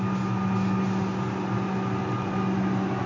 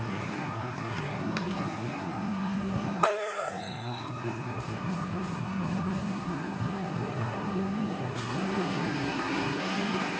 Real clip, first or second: first